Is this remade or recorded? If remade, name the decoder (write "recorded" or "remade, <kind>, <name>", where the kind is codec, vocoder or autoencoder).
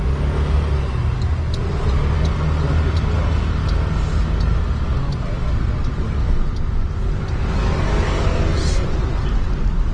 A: recorded